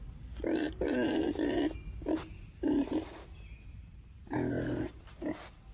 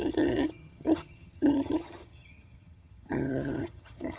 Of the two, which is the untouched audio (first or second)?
first